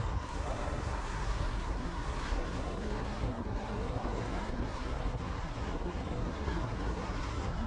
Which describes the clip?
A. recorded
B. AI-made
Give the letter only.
B